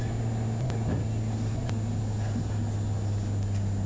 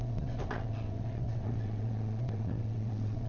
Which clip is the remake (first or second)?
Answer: second